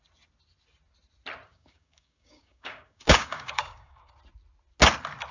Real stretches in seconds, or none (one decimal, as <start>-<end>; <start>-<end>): 0.0-1.5; 4.1-5.3